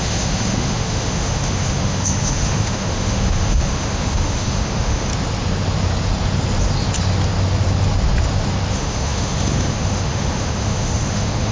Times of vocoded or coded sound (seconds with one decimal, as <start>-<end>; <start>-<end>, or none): 0.0-5.1; 8.7-11.5